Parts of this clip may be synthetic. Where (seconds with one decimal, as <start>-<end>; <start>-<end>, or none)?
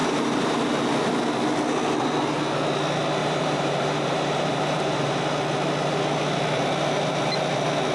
0.0-0.7; 3.2-5.1